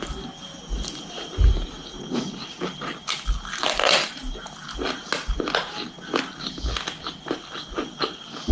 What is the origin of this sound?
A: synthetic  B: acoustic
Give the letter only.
B